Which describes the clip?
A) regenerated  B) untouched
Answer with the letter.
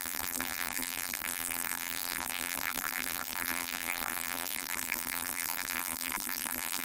A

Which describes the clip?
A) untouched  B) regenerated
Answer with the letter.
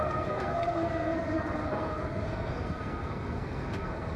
B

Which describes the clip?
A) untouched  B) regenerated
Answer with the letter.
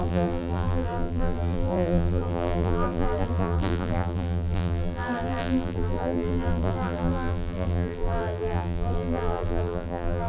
B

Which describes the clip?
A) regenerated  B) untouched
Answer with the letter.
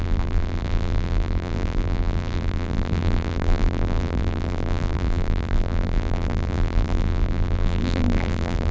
A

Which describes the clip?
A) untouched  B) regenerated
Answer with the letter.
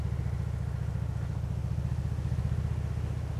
A